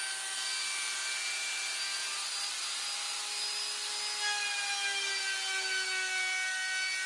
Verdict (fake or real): real